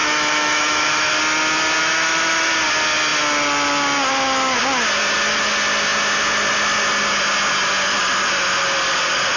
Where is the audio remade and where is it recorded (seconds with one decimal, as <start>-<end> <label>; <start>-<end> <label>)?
0.0-1.2 remade; 1.2-1.8 recorded; 1.8-2.5 remade; 2.5-9.4 recorded